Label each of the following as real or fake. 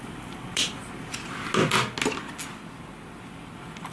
real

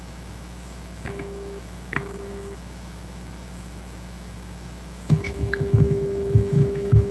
fake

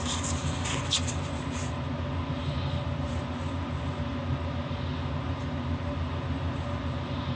real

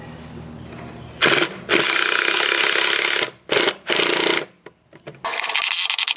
real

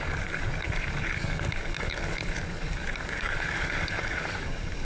fake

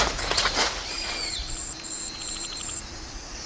fake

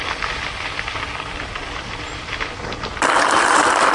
real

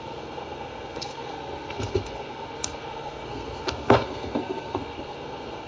fake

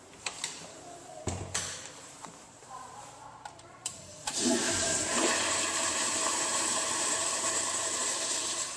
fake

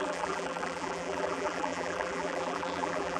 fake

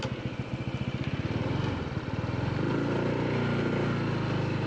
real